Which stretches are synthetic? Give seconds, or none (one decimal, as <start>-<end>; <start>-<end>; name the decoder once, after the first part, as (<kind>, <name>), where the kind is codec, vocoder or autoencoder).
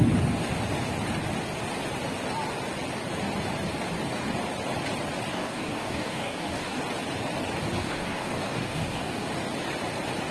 5.3-6.8 (codec, DAC); 7.8-9.3